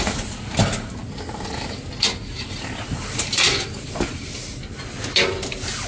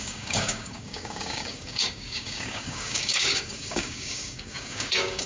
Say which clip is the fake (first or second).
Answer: second